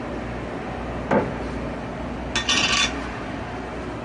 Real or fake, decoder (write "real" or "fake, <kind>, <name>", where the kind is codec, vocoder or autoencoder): real